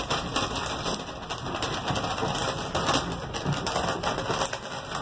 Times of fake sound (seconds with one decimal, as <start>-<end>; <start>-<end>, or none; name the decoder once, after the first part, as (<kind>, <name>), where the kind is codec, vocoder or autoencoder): none